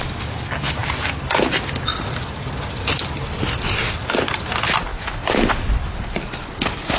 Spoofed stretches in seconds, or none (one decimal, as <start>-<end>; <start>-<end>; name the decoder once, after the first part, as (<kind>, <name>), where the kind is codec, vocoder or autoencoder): 4.9-5.5 (vocoder, BigVGAN v2)